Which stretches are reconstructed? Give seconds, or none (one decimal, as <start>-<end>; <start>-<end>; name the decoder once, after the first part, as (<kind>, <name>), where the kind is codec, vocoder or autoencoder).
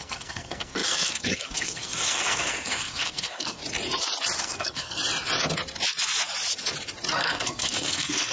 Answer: 0.0-3.6 (codec, SNAC); 4.4-5.0; 7.1-8.3